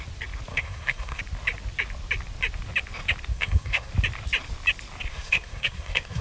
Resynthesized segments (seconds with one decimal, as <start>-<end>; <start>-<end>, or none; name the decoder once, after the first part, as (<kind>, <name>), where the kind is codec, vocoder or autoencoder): 0.5-1.2 (codec, SNAC); 3.3-3.9; 5.1-6.2